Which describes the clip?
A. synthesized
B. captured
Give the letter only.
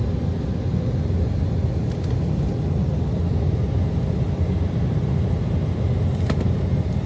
B